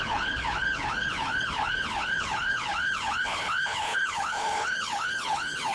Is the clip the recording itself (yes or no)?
no